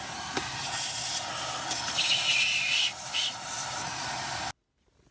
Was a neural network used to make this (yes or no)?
no